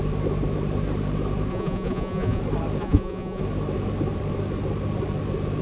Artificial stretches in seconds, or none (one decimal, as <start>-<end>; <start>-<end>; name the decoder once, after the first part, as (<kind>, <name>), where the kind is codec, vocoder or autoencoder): 1.5-2.4 (vocoder, Vocos); 2.8-3.4